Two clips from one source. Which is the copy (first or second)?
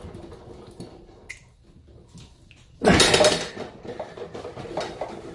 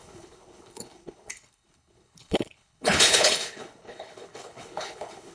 second